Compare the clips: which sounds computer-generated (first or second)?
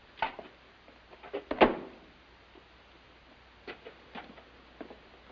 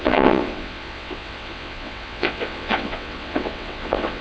second